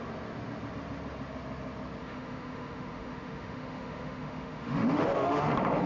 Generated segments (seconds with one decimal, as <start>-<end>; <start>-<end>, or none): 2.0-5.5